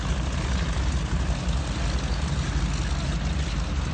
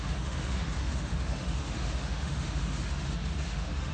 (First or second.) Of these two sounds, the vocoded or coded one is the second